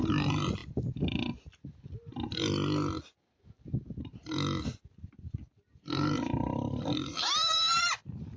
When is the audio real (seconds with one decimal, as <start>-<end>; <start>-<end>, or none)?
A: 0.0-8.4